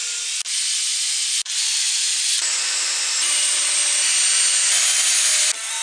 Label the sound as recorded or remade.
recorded